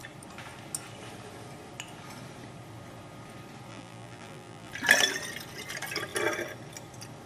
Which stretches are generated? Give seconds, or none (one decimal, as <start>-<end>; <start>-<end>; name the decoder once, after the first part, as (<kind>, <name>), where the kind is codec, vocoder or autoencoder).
3.7-4.7 (vocoder, BigVGAN v2)